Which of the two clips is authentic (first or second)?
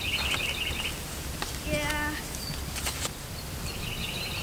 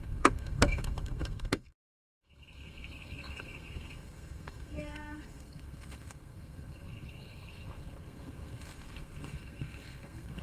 first